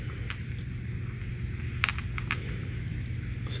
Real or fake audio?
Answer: real